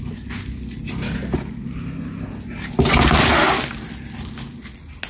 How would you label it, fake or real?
real